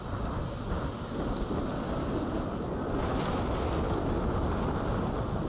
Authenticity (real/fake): real